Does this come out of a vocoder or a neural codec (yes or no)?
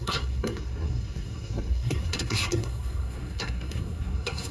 yes